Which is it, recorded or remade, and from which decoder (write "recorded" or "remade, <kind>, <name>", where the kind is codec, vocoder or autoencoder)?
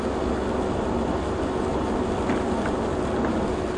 recorded